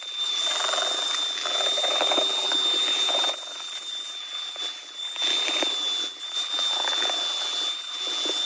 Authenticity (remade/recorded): remade